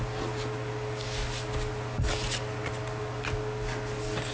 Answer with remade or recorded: recorded